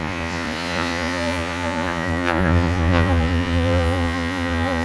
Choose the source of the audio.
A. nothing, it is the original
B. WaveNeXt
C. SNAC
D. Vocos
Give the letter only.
D